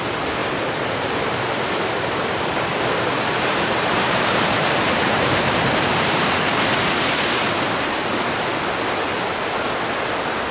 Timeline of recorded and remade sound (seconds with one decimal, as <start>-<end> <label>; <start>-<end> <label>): 0.0-0.4 recorded; 0.4-1.4 remade; 1.4-3.7 recorded; 3.7-8.5 remade; 8.5-10.5 recorded